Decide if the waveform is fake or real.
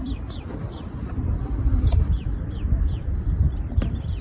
fake